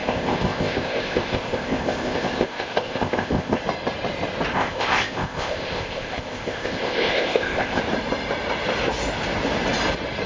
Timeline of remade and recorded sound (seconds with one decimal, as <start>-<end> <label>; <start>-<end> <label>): 0.0-3.6 remade; 3.6-4.5 recorded; 4.5-7.8 remade; 7.8-10.3 recorded